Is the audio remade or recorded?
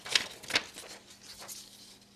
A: recorded